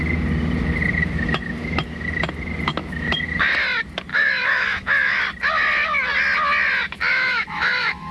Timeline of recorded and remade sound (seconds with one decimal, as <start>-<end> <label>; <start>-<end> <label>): 0.0-1.0 recorded; 1.0-2.3 remade; 2.3-2.7 recorded; 2.7-3.4 remade; 3.4-4.1 recorded; 4.1-5.2 remade; 5.2-7.1 recorded; 7.1-8.1 remade